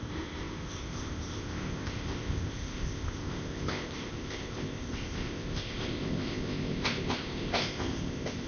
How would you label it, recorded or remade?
remade